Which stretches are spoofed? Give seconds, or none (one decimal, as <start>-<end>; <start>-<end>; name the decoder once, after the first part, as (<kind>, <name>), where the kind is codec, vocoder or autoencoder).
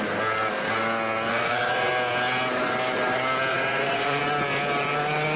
1.3-1.9 (vocoder, Vocos); 3.5-4.2